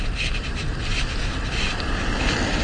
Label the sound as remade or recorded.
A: recorded